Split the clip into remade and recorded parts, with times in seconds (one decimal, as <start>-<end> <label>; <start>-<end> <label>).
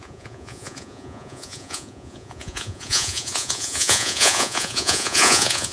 0.0-5.7 remade